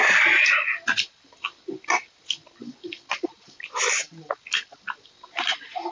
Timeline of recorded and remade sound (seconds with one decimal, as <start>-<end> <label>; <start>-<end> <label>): 0.0-5.9 recorded